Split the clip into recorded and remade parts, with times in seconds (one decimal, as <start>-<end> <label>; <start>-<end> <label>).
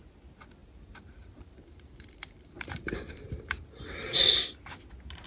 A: 0.0-0.6 recorded; 0.6-3.8 remade; 3.8-5.3 recorded